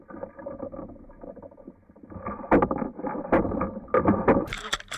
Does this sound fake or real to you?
real